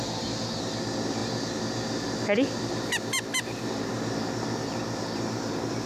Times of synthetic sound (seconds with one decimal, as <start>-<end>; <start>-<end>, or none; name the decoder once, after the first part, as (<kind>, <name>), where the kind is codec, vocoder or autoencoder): none